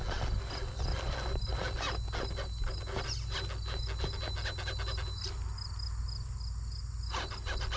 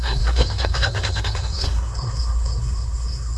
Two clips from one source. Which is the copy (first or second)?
second